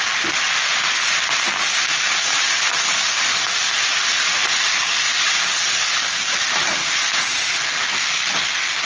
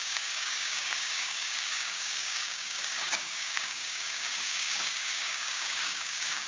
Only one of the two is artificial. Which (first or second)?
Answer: second